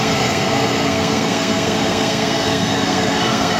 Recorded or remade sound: remade